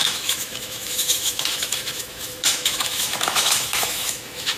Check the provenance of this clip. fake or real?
fake